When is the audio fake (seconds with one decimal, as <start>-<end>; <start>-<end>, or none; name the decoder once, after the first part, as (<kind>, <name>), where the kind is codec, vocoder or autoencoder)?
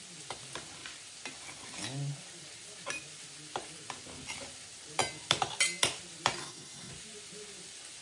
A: 6.4-6.9 (codec, SNAC)